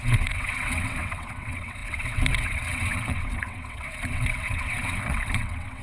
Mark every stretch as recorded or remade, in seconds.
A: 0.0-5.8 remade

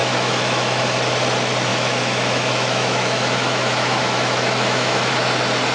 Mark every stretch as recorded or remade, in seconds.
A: 0.0-0.8 remade; 0.8-1.7 recorded; 1.7-5.1 remade; 5.1-5.7 recorded

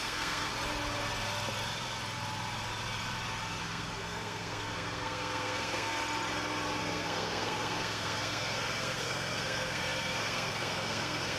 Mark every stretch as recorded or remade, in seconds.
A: 0.0-0.5 remade; 0.5-3.6 recorded; 3.6-6.0 remade; 6.0-6.8 recorded; 6.8-11.4 remade

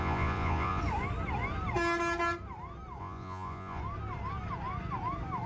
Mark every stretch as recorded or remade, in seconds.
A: 0.0-0.8 remade; 0.8-3.0 recorded; 3.0-3.8 remade; 3.8-5.5 recorded

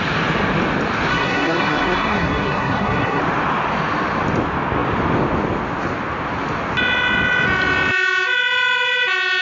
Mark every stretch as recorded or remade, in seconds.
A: 0.0-1.1 recorded; 1.1-3.2 remade; 3.2-9.4 recorded

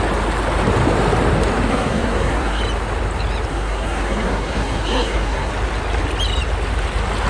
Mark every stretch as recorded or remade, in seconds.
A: 0.0-1.7 recorded; 1.7-2.6 remade; 2.6-3.5 recorded; 3.5-5.5 remade; 5.5-7.3 recorded